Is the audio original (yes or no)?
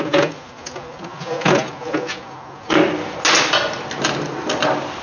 yes